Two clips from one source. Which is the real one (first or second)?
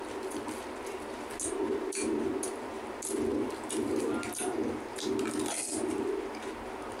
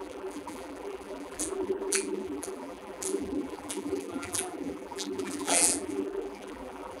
first